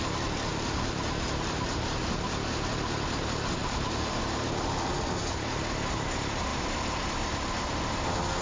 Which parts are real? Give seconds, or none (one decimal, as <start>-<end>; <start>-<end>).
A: 0.0-0.5; 2.0-3.6; 4.2-6.5; 8.0-8.4